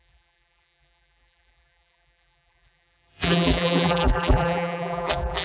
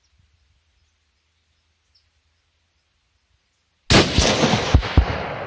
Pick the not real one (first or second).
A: first